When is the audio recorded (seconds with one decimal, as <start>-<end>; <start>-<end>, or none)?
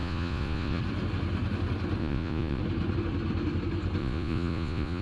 0.8-2.0; 2.6-4.0